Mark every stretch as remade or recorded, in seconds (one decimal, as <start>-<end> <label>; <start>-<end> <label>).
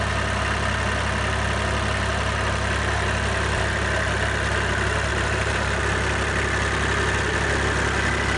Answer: 0.0-5.1 recorded; 5.1-5.8 remade; 5.8-8.4 recorded